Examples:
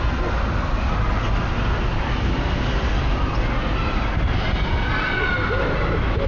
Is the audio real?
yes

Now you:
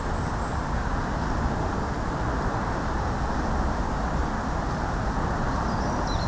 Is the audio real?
yes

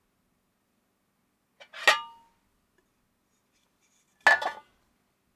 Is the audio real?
yes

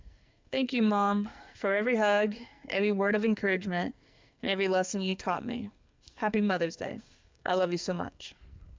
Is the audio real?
no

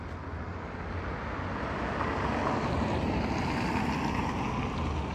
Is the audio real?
yes